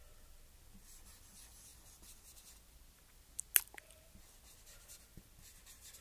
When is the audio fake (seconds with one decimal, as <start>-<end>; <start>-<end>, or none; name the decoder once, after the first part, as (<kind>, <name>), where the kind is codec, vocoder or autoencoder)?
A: none